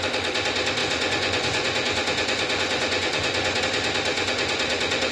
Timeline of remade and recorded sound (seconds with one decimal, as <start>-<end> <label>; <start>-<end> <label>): 0.0-0.8 recorded; 0.8-3.6 remade; 3.6-4.1 recorded; 4.1-5.1 remade